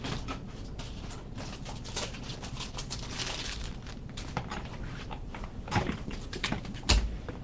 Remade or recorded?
remade